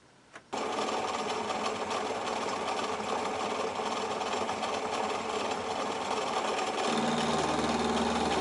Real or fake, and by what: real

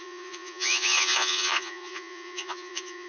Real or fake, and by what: fake, vocoder, Vocos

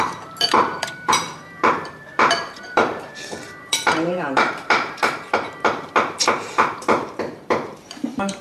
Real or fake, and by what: fake, vocoder, BigVGAN v2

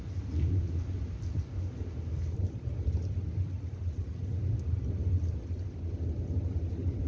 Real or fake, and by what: real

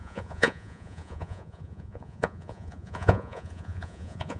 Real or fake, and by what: fake, vocoder, Vocos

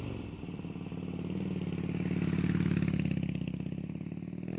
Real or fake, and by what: real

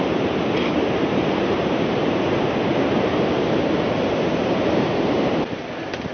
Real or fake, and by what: fake, vocoder, BigVGAN v2